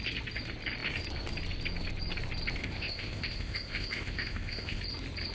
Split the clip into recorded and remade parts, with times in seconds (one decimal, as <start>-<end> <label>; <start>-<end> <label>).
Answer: 0.0-2.6 recorded; 2.6-4.8 remade; 4.8-5.3 recorded